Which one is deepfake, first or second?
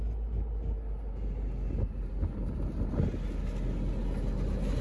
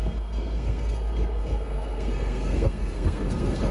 second